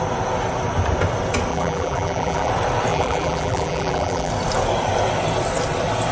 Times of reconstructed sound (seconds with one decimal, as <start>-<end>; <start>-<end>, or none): 1.5-2.5; 2.9-4.3